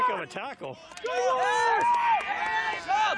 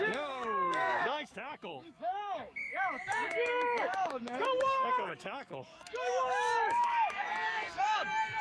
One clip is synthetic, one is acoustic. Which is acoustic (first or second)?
first